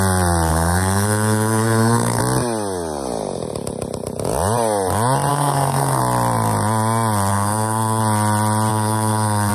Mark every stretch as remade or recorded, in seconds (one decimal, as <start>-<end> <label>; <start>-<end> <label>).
0.0-0.5 recorded; 0.5-2.2 remade; 2.2-5.3 recorded; 5.3-6.0 remade; 6.0-7.3 recorded; 7.3-8.0 remade; 8.0-8.7 recorded; 8.7-9.5 remade